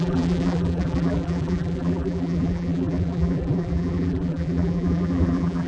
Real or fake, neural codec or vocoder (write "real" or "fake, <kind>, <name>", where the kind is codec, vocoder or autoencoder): fake, vocoder, BigVGAN v2